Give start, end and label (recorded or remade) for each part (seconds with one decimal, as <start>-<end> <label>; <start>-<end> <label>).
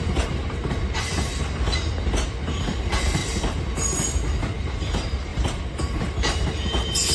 0.0-0.8 remade; 0.8-2.6 recorded; 2.6-3.2 remade; 3.2-4.4 recorded; 4.4-7.1 remade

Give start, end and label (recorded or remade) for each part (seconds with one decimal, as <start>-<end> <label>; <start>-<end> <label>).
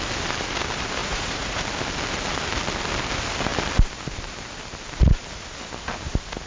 0.0-1.0 recorded; 1.0-1.6 remade; 1.6-6.5 recorded